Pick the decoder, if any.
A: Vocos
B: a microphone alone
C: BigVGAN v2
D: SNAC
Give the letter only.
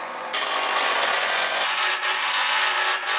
A